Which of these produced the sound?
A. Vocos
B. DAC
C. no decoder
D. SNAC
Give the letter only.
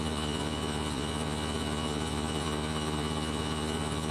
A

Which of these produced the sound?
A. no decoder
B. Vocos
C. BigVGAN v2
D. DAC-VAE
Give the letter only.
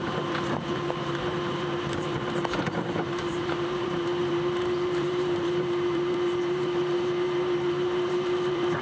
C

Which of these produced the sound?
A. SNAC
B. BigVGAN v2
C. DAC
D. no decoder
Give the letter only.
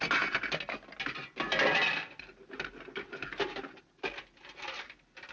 D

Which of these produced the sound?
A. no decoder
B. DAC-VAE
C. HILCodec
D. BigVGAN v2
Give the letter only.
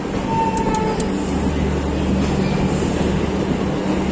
A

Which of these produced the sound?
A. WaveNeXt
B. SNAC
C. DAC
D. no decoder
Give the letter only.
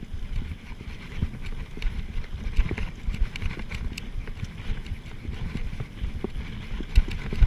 D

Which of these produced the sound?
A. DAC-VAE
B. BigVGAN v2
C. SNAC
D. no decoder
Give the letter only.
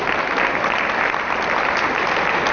D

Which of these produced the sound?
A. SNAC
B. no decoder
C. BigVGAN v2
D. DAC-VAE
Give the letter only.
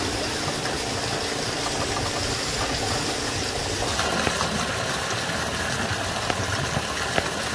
B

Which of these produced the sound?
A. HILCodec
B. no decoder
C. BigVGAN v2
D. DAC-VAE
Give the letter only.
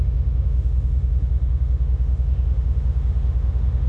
D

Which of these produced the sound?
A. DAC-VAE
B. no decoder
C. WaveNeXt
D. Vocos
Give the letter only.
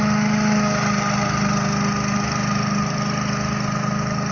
B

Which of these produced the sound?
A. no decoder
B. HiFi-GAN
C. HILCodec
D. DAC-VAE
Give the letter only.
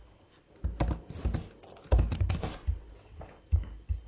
A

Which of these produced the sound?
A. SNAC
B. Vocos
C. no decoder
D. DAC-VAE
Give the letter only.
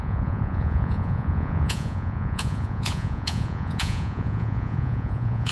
B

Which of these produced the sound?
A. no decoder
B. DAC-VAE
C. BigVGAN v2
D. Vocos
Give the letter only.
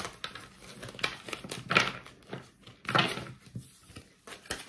A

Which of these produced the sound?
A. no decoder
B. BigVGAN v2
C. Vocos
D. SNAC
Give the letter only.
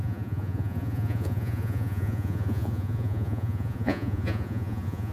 C